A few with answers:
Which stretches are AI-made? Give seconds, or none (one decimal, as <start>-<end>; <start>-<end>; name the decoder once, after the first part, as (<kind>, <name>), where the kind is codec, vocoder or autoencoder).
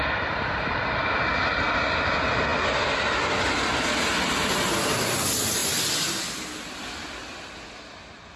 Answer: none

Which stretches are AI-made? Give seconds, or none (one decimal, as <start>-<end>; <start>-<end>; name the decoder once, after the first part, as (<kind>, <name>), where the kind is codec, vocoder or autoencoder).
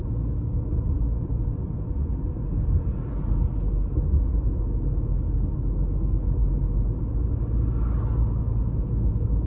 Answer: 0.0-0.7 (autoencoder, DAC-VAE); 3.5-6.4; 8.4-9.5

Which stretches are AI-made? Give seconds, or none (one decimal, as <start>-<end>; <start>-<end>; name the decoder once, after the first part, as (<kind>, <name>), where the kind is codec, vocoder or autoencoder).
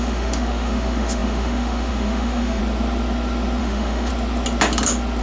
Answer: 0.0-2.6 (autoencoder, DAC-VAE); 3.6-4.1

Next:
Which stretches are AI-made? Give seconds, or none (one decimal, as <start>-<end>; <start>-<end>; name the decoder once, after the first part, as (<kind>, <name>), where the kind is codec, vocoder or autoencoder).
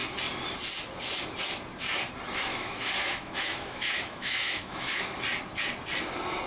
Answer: 2.5-5.0 (autoencoder, DAC-VAE)